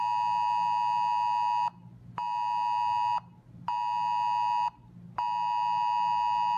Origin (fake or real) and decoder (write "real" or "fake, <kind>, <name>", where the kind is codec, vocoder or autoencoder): real